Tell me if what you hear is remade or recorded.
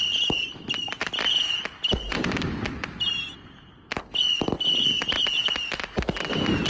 recorded